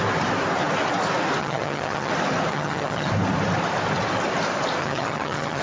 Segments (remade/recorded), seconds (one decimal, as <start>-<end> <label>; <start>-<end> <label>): 0.0-1.4 recorded; 1.4-2.1 remade; 2.1-2.5 recorded; 2.5-3.1 remade; 3.1-4.8 recorded; 4.8-5.6 remade